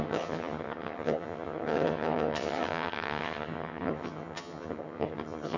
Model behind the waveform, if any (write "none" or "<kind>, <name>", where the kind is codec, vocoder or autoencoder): vocoder, HiFi-GAN